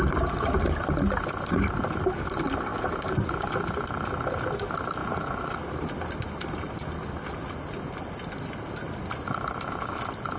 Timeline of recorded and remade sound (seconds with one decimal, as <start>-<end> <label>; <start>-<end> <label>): 0.0-5.0 recorded; 5.0-5.6 remade; 5.6-10.4 recorded